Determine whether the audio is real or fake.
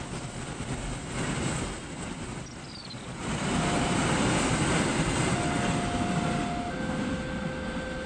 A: real